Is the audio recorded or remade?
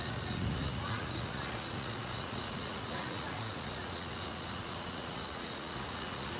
remade